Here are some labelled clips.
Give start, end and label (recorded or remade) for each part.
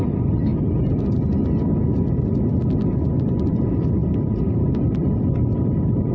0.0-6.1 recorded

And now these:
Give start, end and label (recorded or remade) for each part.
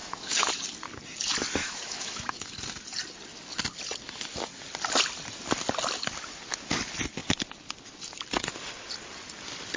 0.0-0.5 remade; 0.5-1.6 recorded; 1.6-2.5 remade; 2.5-9.8 recorded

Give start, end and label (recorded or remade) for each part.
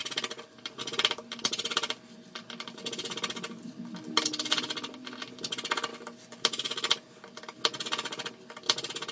0.0-9.1 recorded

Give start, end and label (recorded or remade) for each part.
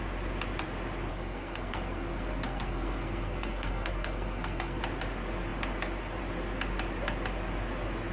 0.0-1.1 recorded; 1.1-4.8 remade; 4.8-8.1 recorded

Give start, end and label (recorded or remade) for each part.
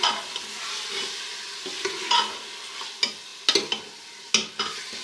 0.0-5.0 recorded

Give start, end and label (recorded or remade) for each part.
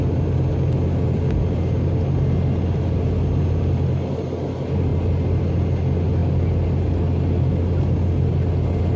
0.0-9.0 recorded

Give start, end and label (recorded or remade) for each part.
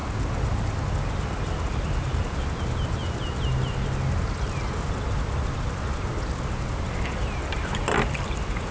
0.0-8.7 recorded